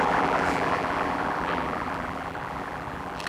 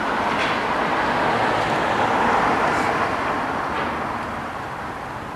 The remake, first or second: first